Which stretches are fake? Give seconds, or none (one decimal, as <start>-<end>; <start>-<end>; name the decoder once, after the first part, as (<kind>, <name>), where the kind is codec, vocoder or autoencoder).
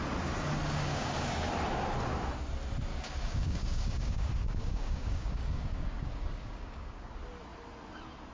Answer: 0.6-1.5 (codec, DAC); 2.9-7.1